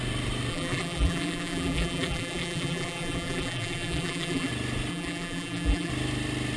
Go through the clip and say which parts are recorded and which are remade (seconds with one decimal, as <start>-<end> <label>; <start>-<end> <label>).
0.0-0.5 recorded; 0.5-4.5 remade; 4.5-4.9 recorded; 4.9-5.9 remade; 5.9-6.6 recorded